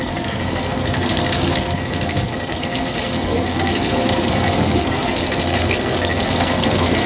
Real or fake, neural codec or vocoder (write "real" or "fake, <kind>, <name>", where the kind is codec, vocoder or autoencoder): fake, codec, SNAC